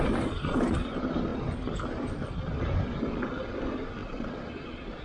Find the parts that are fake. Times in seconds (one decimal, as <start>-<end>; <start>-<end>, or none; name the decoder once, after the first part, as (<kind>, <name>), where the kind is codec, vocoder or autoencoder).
none